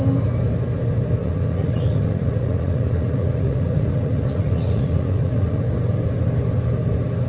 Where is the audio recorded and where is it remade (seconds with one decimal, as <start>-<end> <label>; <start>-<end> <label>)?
0.0-1.2 recorded; 1.2-5.6 remade; 5.6-7.3 recorded